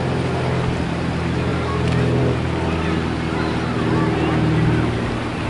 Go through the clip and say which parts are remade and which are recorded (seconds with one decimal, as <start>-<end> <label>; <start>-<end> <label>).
0.0-5.5 recorded